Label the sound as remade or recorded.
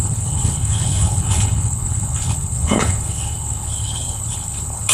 remade